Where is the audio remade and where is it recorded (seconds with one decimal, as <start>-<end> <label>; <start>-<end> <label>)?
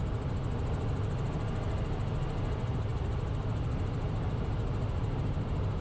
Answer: 0.0-5.8 recorded